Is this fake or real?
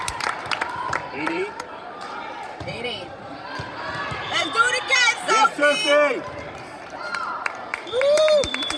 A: fake